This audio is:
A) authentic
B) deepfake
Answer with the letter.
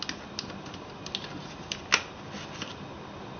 A